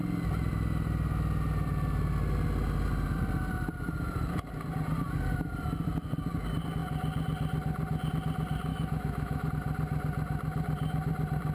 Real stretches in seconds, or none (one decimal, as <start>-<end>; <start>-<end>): 0.0-8.7; 9.5-11.5